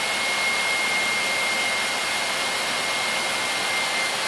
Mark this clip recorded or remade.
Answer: recorded